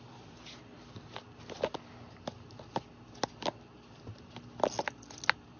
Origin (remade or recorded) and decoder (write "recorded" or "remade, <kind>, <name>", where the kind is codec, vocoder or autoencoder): recorded